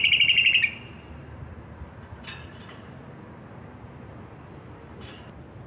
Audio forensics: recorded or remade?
recorded